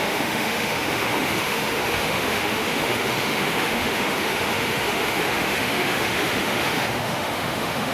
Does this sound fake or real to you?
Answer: fake